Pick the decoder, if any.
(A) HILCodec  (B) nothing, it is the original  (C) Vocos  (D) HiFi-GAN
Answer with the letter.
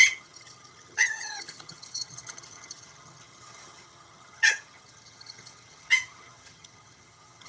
D